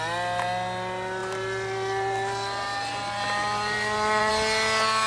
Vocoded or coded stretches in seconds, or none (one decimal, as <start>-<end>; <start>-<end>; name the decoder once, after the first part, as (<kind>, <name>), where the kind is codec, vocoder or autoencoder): 1.2-4.3 (vocoder, BigVGAN v2)